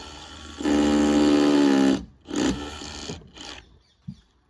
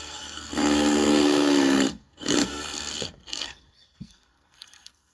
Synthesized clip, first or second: second